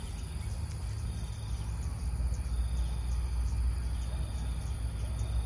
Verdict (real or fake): real